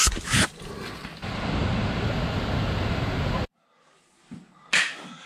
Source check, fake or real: real